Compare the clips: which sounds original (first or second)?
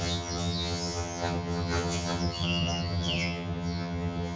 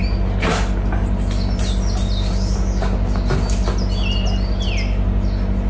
second